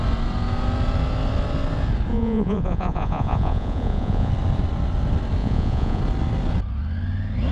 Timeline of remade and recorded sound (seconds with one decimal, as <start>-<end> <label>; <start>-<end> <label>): 0.0-2.1 recorded; 2.1-4.3 remade; 4.3-5.4 recorded; 5.4-6.0 remade; 6.0-7.5 recorded